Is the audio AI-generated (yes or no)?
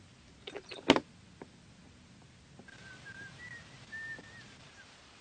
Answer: no